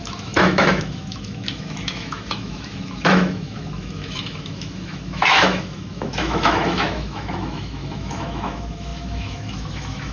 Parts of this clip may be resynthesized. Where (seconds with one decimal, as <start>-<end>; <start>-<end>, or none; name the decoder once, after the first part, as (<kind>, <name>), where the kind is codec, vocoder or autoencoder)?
0.0-10.1 (autoencoder, DAC-VAE)